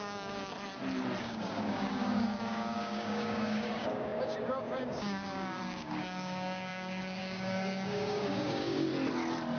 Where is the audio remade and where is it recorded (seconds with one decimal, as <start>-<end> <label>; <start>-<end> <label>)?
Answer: 0.0-0.5 remade; 0.5-1.2 recorded; 1.2-8.9 remade; 8.9-9.6 recorded